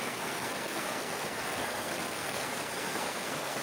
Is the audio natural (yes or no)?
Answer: no